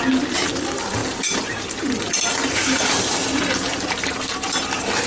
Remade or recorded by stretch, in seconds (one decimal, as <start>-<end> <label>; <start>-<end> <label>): 0.0-5.1 remade